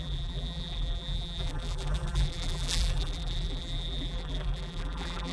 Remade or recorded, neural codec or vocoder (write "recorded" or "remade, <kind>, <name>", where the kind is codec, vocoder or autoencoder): remade, vocoder, BigVGAN v2